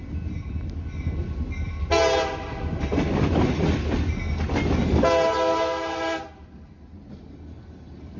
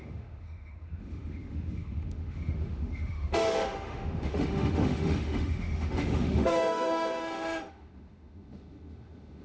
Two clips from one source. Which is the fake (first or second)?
second